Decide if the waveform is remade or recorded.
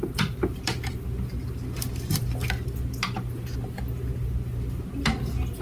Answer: recorded